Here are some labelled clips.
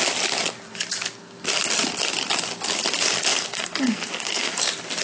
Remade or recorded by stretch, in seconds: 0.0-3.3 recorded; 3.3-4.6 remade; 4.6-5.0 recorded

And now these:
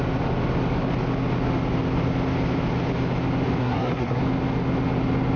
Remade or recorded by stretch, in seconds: 0.0-3.6 recorded; 3.6-4.2 remade; 4.2-5.4 recorded